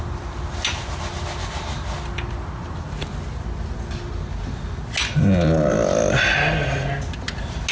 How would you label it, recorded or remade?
recorded